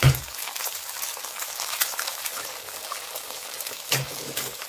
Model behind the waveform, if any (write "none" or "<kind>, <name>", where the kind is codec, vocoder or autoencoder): codec, DAC